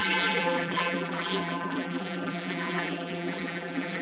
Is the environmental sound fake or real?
fake